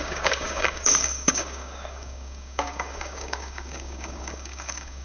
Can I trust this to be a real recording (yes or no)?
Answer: no